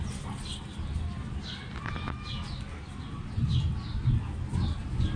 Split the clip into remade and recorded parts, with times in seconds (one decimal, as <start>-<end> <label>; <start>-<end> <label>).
0.0-5.2 recorded